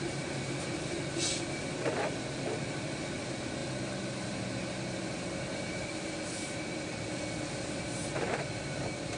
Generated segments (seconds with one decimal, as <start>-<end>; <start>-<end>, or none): none